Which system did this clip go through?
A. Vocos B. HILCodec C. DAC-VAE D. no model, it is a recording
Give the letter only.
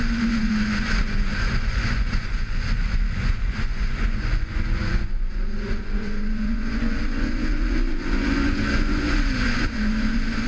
A